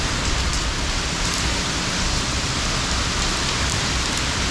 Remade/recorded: remade